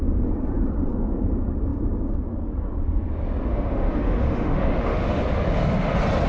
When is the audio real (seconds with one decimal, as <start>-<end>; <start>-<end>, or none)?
0.0-3.5; 5.2-6.3